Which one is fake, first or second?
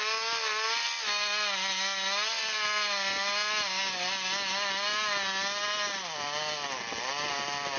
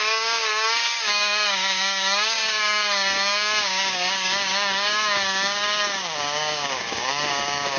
second